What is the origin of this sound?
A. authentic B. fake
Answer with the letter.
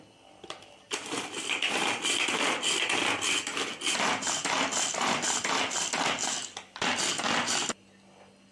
A